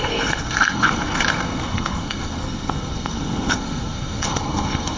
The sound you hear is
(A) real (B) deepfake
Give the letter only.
B